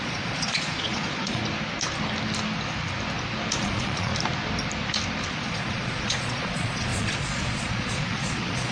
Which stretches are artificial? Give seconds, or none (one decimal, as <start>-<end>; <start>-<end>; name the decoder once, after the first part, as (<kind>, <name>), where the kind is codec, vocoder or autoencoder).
0.0-1.4 (vocoder, Vocos); 3.6-4.1; 5.3-8.7